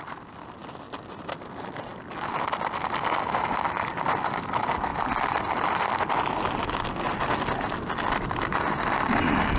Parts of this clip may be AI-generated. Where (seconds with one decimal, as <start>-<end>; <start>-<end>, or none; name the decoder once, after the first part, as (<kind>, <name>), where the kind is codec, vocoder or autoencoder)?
none